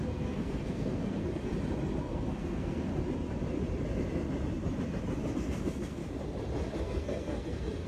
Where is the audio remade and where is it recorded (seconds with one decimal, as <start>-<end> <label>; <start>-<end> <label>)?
0.0-1.5 remade; 1.5-2.0 recorded; 2.0-2.9 remade; 2.9-5.3 recorded; 5.3-6.0 remade; 6.0-6.8 recorded; 6.8-7.9 remade